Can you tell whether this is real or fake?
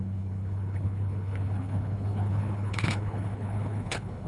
fake